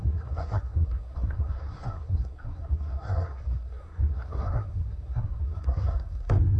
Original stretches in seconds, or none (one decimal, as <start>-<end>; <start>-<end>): none